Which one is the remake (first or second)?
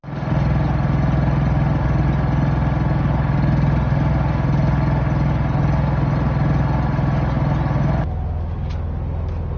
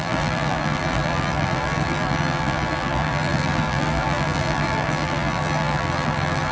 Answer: second